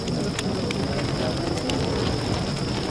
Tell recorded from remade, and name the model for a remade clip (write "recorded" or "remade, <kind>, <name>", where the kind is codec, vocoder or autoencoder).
recorded